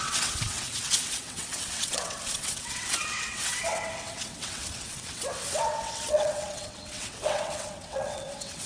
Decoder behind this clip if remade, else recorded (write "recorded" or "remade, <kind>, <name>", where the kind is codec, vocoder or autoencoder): remade, vocoder, WaveNeXt